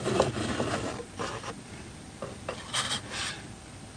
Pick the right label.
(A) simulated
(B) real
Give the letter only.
B